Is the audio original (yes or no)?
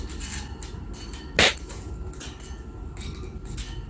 yes